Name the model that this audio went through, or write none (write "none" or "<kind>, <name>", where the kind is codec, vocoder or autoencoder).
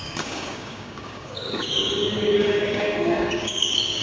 codec, DAC